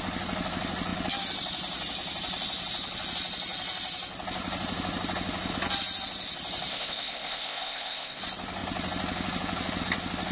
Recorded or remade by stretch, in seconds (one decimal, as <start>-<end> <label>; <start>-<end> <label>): 0.0-6.7 recorded; 6.7-8.2 remade; 8.2-10.3 recorded